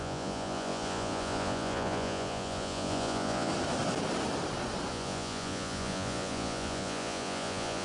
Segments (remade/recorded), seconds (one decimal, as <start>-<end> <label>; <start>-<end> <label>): 0.0-3.5 remade; 3.5-4.9 recorded; 4.9-7.8 remade